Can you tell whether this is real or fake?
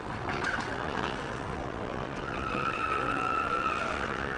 fake